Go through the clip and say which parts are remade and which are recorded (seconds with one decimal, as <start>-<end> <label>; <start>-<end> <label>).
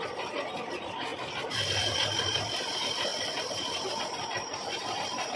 0.0-5.4 recorded